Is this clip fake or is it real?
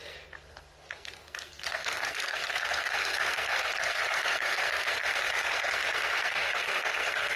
fake